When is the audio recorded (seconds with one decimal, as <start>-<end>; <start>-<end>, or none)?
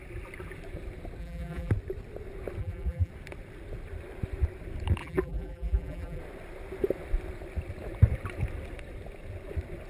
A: 0.0-1.2; 1.7-2.6; 3.1-5.0; 6.2-9.9